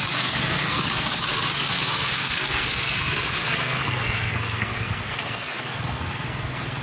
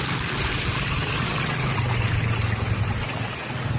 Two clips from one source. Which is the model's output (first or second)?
first